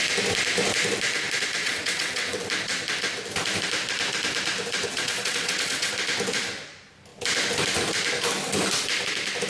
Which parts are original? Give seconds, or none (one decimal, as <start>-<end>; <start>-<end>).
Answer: 0.0-1.6; 2.4-4.9; 5.9-9.5